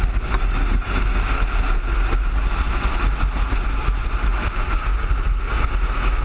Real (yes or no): yes